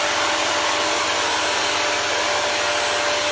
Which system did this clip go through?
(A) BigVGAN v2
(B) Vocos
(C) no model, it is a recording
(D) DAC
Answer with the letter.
C